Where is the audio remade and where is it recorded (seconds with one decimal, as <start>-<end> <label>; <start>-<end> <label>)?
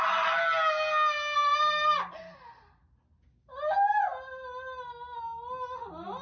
0.0-6.2 recorded